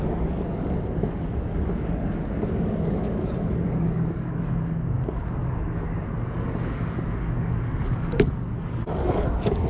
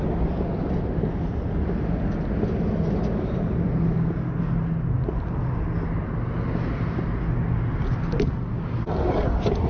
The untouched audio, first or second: second